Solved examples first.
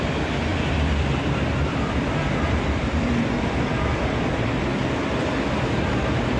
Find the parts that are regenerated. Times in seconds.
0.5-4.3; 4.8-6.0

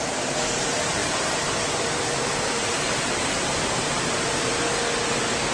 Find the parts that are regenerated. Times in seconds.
0.0-4.5